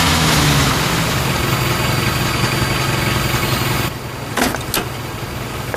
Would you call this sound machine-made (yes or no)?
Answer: no